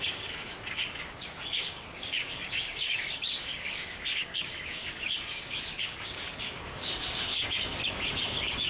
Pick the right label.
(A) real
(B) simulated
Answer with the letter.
B